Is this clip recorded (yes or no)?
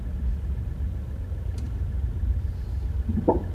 yes